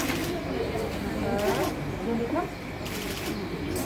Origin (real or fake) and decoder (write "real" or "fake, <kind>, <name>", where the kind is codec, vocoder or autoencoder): real